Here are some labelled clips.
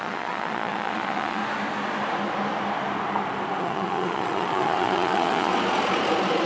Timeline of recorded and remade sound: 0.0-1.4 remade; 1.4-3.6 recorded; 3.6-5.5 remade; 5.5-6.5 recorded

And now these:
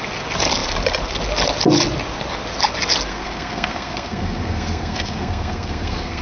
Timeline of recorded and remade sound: 0.0-3.1 recorded; 3.1-6.2 remade

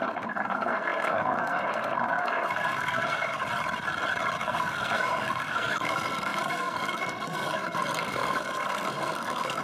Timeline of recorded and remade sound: 0.0-3.4 remade; 3.4-4.4 recorded; 4.4-9.6 remade